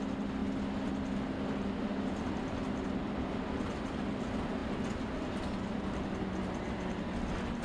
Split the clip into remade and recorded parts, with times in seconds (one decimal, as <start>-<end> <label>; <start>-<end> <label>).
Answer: 0.0-7.6 recorded